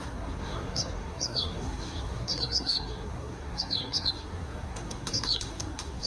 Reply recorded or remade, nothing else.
remade